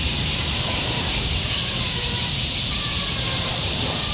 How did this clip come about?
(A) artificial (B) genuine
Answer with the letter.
A